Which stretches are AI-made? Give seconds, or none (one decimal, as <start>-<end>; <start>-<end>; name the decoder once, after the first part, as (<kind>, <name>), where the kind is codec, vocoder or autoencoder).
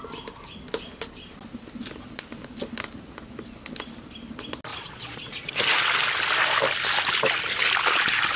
4.7-5.5 (vocoder, Vocos)